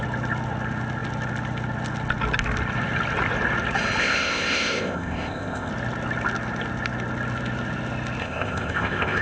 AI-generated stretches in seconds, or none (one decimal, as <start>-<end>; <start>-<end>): 4.0-5.7; 8.2-9.2

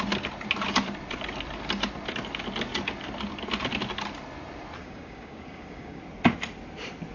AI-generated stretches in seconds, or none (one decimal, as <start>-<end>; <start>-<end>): 4.8-6.0

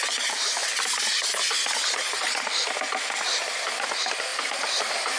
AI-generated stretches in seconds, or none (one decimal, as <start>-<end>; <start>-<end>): none

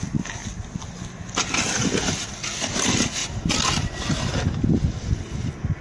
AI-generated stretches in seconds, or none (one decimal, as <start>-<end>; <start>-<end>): none

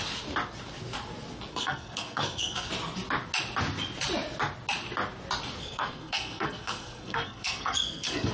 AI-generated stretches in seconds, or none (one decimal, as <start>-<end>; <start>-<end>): 1.5-2.7; 5.6-8.3

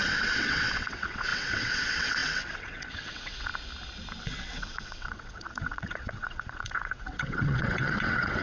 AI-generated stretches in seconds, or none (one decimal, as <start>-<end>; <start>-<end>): 0.0-3.5; 4.2-8.4